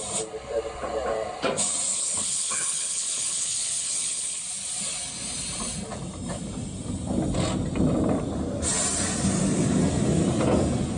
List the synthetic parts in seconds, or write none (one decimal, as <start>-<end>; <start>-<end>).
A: 1.9-4.4